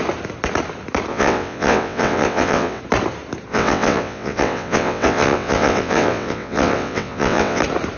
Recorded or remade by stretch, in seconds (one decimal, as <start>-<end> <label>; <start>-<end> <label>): 0.0-1.1 recorded; 1.1-2.8 remade; 2.8-3.5 recorded; 3.5-7.6 remade; 7.6-8.0 recorded